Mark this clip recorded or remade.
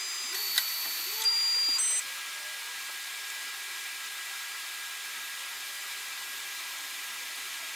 recorded